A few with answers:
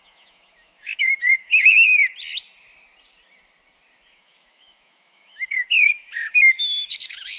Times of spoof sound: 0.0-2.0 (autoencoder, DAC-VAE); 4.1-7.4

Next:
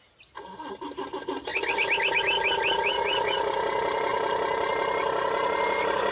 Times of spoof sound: none

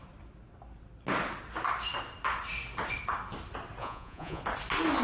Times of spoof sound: 3.8-4.4 (vocoder, Vocos)